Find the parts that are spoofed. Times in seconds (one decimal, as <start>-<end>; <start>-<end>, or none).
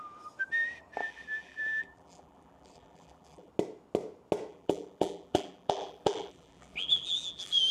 1.0-3.5; 4.5-7.7